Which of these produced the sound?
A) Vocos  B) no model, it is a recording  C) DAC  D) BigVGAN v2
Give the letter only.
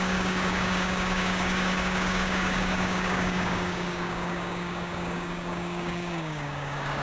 C